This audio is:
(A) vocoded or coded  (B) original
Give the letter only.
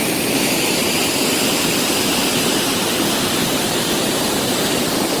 A